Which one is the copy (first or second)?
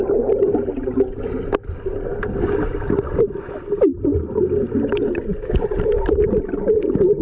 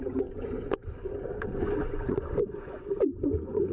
second